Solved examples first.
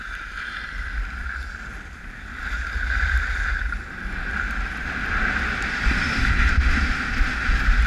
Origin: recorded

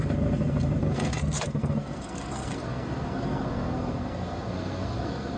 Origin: remade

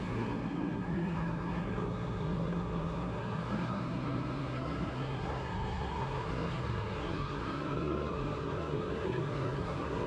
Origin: remade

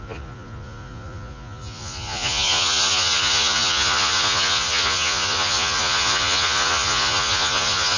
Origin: remade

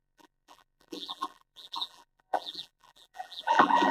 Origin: remade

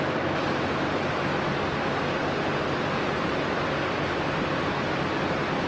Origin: recorded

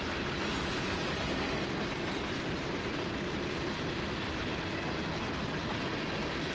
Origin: recorded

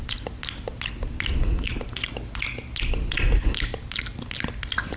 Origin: recorded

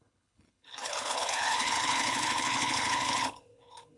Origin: remade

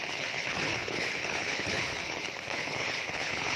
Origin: remade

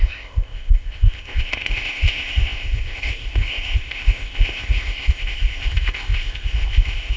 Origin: remade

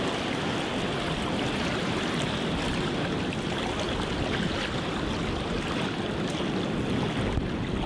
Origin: recorded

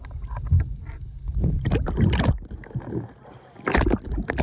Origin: recorded